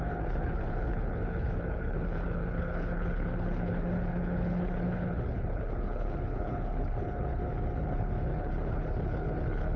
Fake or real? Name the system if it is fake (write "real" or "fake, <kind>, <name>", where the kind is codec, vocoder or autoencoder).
fake, codec, HILCodec